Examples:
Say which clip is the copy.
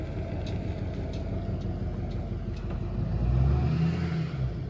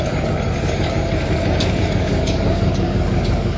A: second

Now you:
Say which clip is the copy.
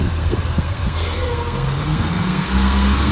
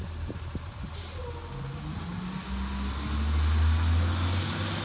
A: first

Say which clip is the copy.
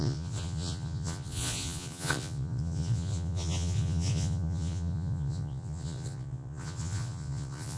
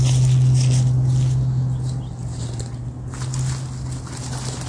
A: first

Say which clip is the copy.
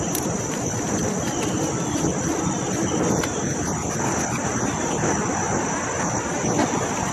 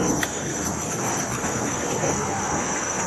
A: second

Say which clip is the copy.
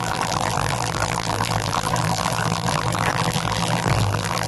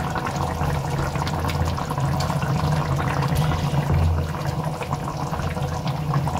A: first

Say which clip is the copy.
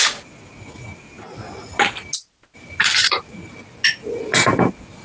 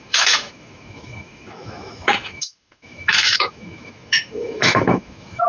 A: second